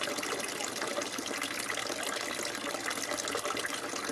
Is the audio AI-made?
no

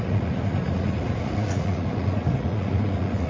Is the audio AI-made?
yes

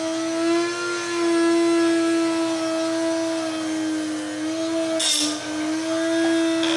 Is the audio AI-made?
no